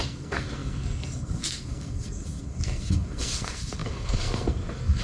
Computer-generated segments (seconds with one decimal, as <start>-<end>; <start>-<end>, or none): 0.0-5.0